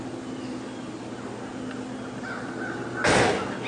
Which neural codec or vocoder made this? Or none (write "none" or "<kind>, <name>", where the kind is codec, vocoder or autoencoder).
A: none